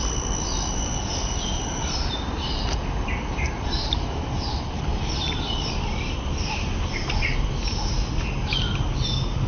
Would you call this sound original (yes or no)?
yes